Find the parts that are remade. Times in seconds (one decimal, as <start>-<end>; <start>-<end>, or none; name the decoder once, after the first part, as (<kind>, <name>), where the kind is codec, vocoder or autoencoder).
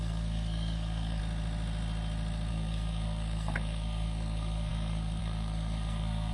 0.0-1.2 (codec, SNAC); 2.5-6.3